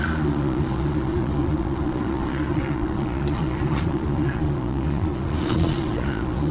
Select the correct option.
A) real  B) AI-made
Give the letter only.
B